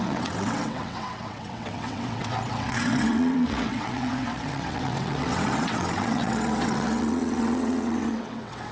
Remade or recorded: remade